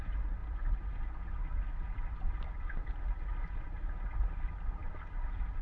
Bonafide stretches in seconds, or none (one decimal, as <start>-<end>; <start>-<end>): 0.0-5.6